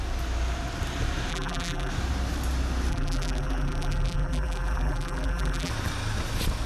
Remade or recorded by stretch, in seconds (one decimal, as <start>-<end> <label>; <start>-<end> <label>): 0.0-1.3 recorded; 1.3-1.9 remade; 1.9-2.9 recorded; 2.9-5.7 remade; 5.7-6.7 recorded